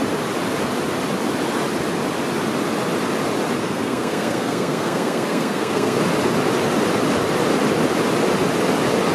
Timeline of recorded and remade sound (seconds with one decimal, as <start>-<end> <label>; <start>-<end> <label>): 0.0-3.6 recorded; 3.6-6.0 remade; 6.0-9.1 recorded